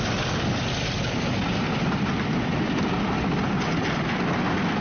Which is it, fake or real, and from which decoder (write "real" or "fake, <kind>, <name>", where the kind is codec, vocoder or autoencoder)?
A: real